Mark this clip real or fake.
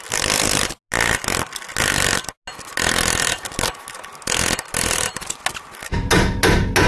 real